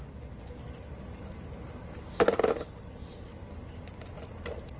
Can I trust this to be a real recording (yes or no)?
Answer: yes